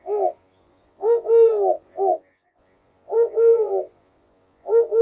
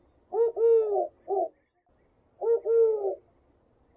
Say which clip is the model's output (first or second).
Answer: first